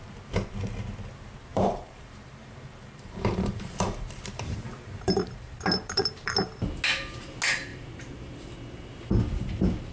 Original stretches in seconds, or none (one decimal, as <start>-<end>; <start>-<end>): 0.0-1.5; 6.5-7.7; 8.5-9.9